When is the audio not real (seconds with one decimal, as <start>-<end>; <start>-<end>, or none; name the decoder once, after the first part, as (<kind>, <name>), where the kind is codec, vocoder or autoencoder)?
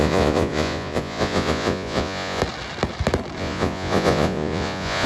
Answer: 0.0-2.4 (vocoder, Vocos); 3.4-5.1